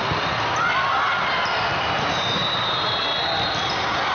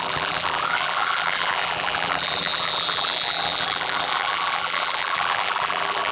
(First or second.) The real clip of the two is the first